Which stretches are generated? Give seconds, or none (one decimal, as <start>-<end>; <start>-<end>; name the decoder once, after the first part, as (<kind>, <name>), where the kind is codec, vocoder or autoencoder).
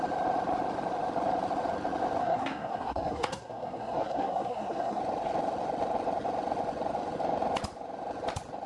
2.2-5.0 (codec, SNAC)